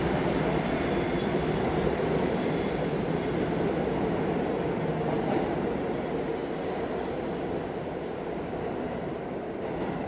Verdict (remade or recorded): recorded